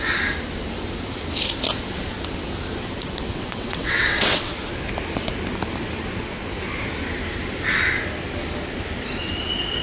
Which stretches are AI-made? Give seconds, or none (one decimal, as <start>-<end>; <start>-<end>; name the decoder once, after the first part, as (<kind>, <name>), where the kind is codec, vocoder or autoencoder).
3.3-4.5 (vocoder, WaveNeXt)